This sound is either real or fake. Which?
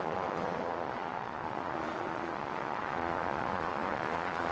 fake